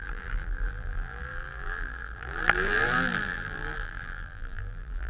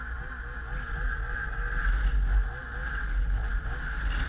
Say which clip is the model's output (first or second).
first